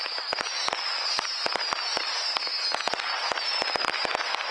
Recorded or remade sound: recorded